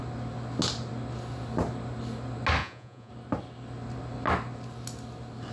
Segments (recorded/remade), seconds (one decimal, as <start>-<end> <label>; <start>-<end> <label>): 0.0-2.6 recorded; 2.6-3.1 remade; 3.1-5.5 recorded